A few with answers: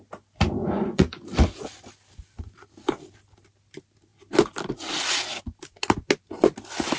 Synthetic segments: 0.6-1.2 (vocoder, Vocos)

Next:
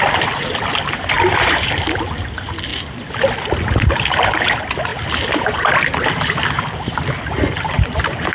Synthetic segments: none

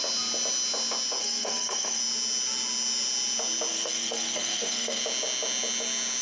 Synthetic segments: 1.2-2.0 (codec, SNAC); 3.7-5.0

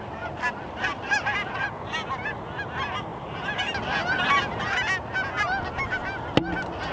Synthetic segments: none

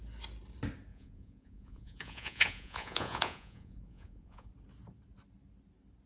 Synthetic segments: 0.9-4.5 (vocoder, Vocos)

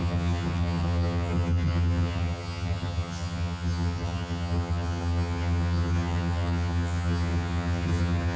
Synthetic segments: 0.0-8.4 (vocoder, HiFi-GAN)